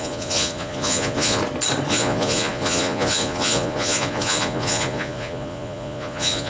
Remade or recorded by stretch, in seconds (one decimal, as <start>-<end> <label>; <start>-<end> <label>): 0.0-1.4 remade; 1.4-1.9 recorded; 1.9-6.5 remade